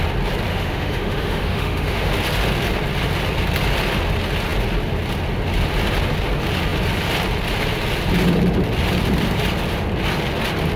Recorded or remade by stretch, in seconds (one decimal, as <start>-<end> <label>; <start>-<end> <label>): 0.0-0.5 recorded; 0.5-2.1 remade; 2.1-10.8 recorded